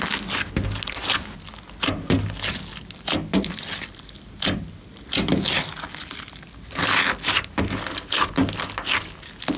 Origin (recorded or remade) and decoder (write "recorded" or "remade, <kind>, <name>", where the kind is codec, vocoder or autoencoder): recorded